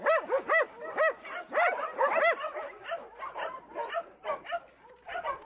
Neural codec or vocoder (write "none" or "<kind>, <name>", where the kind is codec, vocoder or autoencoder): none